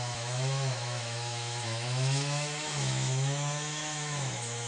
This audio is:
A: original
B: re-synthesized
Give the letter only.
B